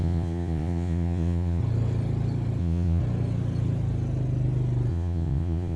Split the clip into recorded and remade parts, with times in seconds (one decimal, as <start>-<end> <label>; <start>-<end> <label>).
0.0-1.6 remade; 1.6-2.6 recorded; 2.6-3.0 remade; 3.0-4.9 recorded; 4.9-5.8 remade